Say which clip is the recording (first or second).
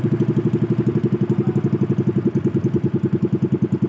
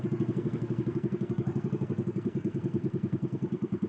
first